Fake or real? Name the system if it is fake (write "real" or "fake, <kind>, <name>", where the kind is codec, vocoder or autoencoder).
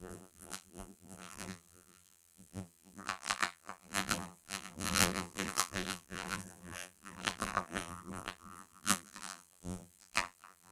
fake, vocoder, BigVGAN v2